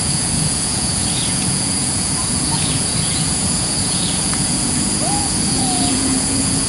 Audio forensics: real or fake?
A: fake